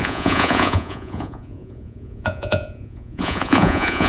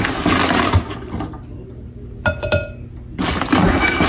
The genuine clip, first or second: second